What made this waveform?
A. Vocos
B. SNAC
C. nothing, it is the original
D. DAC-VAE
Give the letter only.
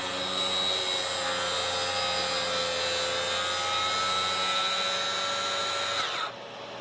C